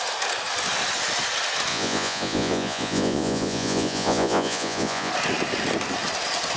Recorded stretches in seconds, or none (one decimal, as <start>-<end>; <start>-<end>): 0.0-1.7; 5.1-6.6